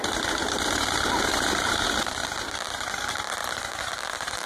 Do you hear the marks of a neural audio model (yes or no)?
no